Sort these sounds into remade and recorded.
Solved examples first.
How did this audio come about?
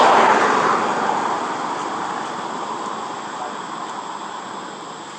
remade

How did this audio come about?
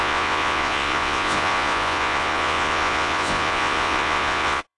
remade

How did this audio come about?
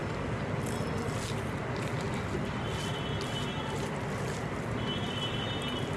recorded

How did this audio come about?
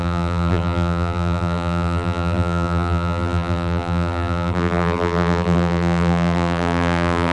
remade